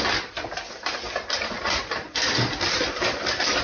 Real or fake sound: real